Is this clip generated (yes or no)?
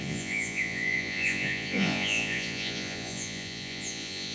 yes